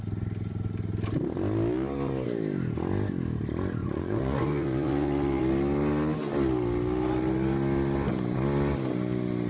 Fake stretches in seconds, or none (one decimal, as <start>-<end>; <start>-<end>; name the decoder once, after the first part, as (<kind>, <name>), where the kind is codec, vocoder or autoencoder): 3.8-5.4 (vocoder, Vocos)